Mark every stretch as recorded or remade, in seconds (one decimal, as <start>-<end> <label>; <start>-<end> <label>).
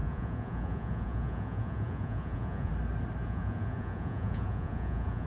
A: 0.0-2.7 remade; 2.7-3.2 recorded; 3.2-5.3 remade